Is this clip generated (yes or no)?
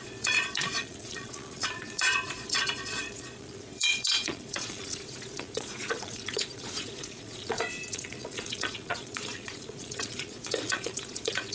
yes